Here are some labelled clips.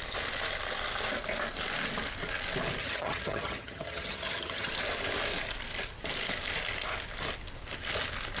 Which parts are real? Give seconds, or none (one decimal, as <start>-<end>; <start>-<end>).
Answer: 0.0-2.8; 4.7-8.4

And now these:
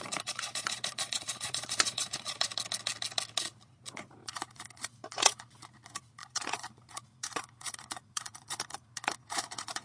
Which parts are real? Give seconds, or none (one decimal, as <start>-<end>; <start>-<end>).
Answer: 2.5-3.4

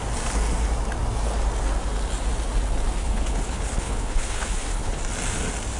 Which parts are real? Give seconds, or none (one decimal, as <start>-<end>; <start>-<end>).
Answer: 0.0-3.0; 5.0-5.8